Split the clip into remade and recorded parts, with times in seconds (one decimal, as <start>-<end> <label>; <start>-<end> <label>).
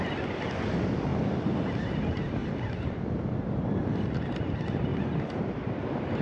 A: 0.0-4.9 recorded; 4.9-6.2 remade